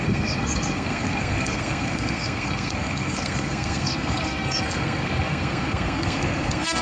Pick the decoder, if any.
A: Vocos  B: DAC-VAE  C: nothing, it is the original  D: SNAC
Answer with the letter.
D